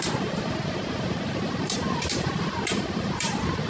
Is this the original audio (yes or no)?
no